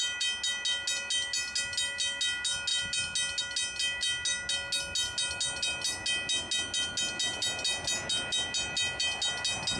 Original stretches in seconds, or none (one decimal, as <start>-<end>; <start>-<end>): 0.0-9.8